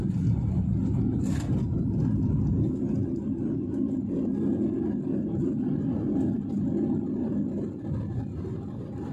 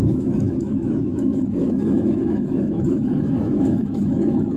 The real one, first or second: first